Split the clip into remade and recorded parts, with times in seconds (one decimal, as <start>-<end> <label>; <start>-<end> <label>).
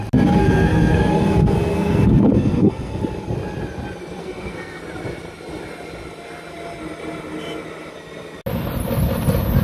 0.0-0.4 recorded; 0.4-3.0 remade; 3.0-4.2 recorded; 4.2-4.8 remade; 4.8-9.6 recorded